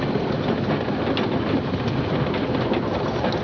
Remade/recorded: recorded